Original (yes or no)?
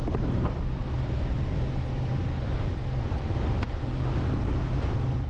yes